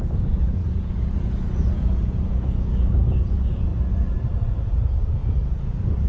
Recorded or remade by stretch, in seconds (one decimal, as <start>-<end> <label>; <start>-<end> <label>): 0.0-3.7 remade; 3.7-4.3 recorded; 4.3-6.1 remade